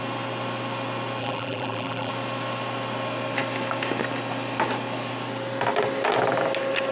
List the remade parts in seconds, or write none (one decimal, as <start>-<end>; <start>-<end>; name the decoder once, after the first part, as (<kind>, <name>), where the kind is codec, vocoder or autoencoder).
1.2-2.1 (vocoder, BigVGAN v2)